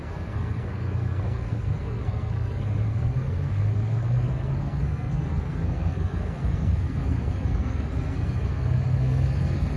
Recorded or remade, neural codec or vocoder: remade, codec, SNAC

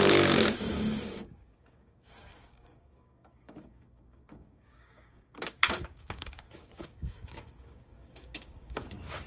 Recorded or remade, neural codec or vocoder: remade, codec, DAC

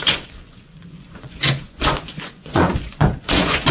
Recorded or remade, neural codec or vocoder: remade, vocoder, Vocos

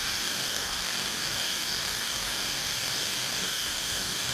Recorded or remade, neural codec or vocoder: remade, codec, DAC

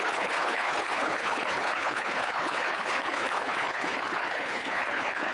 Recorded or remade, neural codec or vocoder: remade, codec, HILCodec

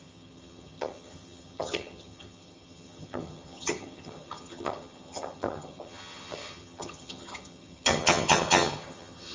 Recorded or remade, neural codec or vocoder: remade, vocoder, HiFi-GAN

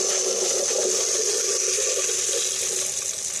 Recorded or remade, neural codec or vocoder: recorded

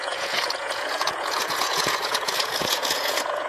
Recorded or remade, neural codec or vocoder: remade, vocoder, Vocos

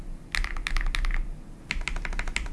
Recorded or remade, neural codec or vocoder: recorded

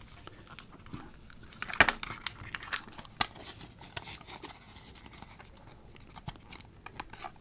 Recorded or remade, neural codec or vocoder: recorded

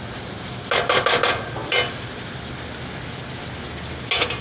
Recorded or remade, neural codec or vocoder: recorded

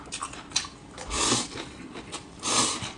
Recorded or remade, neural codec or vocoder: recorded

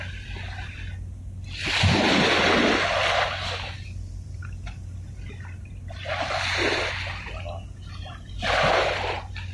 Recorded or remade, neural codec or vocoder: recorded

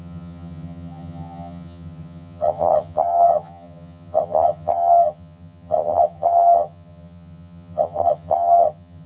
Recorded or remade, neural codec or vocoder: remade, vocoder, HiFi-GAN